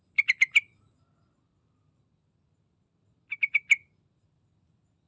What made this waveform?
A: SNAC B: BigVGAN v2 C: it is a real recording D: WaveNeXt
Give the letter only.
C